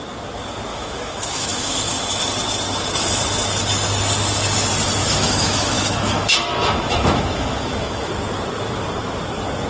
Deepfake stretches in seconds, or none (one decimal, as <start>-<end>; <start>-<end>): 0.7-2.2; 5.0-8.1